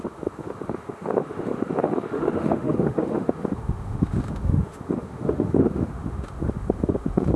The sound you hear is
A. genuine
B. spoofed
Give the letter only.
B